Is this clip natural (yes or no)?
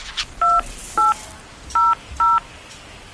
yes